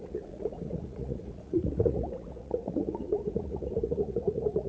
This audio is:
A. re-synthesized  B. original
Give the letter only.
A